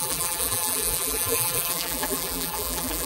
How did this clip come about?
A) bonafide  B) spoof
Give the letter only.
B